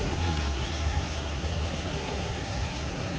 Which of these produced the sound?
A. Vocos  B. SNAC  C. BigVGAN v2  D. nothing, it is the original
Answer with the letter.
B